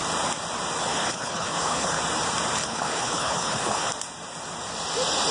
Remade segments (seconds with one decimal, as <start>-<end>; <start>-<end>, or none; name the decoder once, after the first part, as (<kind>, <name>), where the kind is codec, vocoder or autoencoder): 0.9-2.0 (codec, HILCodec); 2.6-3.9